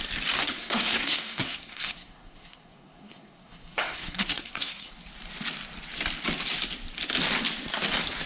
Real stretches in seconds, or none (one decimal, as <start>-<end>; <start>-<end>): 0.0-0.4; 4.9-8.3